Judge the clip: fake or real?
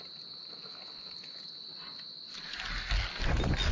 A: real